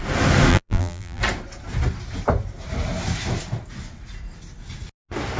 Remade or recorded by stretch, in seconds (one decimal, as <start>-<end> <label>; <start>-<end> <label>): 0.0-0.5 recorded; 0.5-1.2 remade; 1.2-5.4 recorded